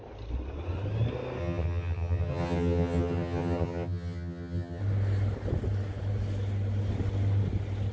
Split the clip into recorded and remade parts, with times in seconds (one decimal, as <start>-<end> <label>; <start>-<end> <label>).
0.0-1.4 recorded; 1.4-4.8 remade; 4.8-7.9 recorded

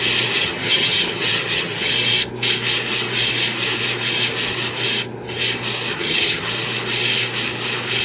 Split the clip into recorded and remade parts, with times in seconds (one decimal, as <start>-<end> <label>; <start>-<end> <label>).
0.0-0.4 recorded; 0.4-1.9 remade; 1.9-5.9 recorded; 5.9-6.5 remade; 6.5-8.0 recorded

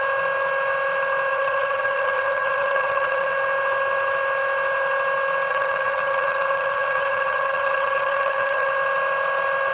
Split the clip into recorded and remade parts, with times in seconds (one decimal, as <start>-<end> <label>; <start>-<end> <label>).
0.0-1.3 recorded; 1.3-3.3 remade; 3.3-5.5 recorded; 5.5-8.7 remade; 8.7-9.7 recorded

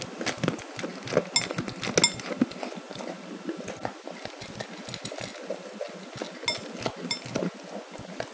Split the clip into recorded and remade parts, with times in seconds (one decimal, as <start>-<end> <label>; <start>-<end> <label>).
0.0-8.3 recorded